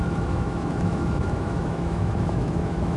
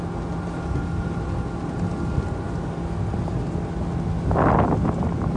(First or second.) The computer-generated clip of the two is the first